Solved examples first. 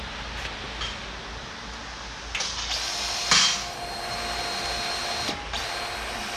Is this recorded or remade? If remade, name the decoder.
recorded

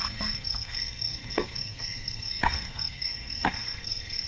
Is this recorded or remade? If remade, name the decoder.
remade, codec, SNAC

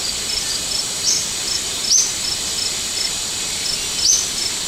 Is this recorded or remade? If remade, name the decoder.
recorded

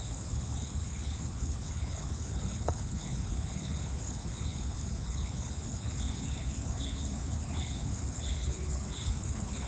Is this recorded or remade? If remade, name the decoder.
remade, codec, HILCodec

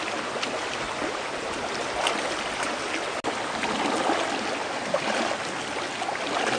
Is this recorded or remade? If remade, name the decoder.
recorded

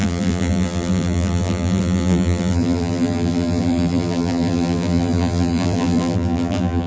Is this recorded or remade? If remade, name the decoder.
remade, vocoder, BigVGAN v2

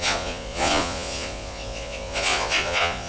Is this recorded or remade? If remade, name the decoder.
remade, vocoder, Vocos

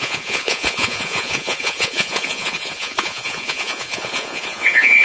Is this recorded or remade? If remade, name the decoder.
remade, vocoder, Vocos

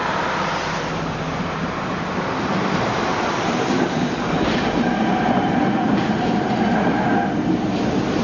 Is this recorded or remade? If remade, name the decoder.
remade, vocoder, BigVGAN v2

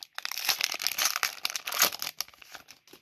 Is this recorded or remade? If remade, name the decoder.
recorded